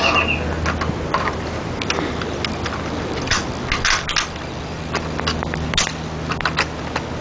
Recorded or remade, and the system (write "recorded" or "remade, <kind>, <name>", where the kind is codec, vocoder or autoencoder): recorded